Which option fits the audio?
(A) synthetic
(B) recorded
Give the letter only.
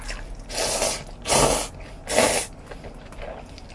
B